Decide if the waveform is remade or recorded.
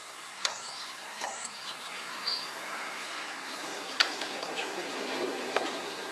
remade